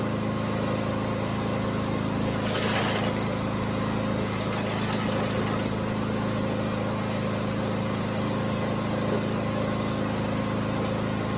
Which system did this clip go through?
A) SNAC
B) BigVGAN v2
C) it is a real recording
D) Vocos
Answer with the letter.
C